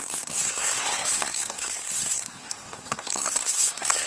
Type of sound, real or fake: fake